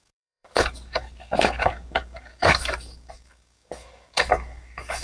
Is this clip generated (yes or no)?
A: yes